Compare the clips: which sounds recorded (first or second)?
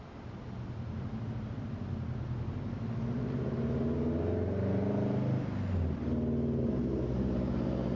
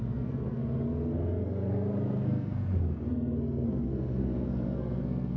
first